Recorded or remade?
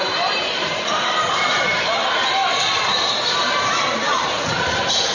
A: remade